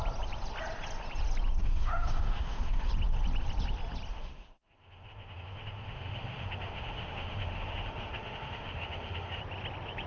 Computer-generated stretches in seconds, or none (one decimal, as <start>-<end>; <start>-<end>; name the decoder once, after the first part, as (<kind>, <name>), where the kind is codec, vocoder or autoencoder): 1.6-2.9 (autoencoder, DAC-VAE); 4.1-9.4